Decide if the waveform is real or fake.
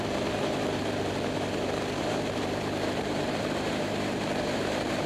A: fake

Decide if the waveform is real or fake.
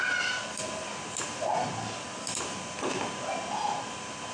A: real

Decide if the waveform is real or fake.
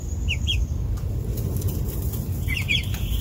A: real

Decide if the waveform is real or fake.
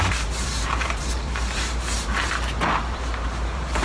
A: fake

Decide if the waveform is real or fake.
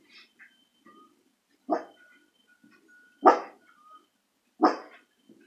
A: real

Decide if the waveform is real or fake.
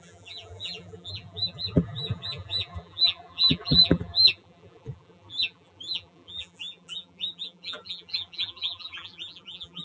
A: fake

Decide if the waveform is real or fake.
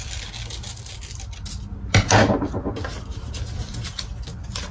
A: real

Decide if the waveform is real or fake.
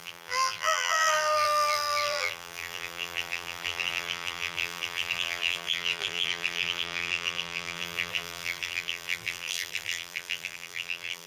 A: fake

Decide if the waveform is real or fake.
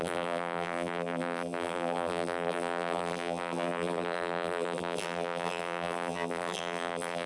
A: fake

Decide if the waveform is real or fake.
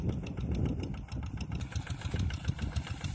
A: fake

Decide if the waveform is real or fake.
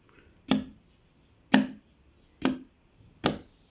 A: real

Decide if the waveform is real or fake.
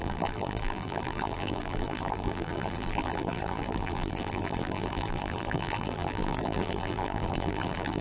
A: fake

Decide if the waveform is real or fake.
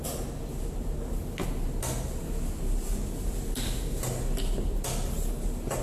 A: real